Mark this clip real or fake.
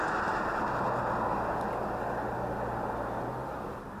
real